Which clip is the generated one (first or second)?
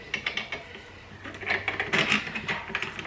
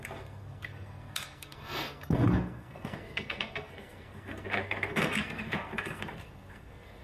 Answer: second